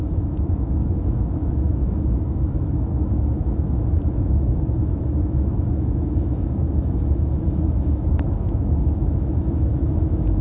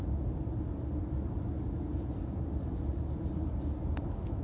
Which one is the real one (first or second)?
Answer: second